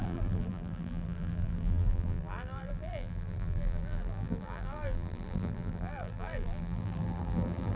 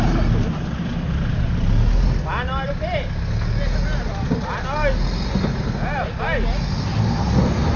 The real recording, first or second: second